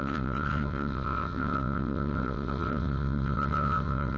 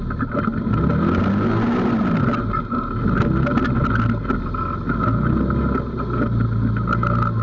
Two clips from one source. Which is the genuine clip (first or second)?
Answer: second